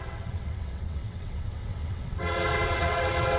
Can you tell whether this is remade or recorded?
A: remade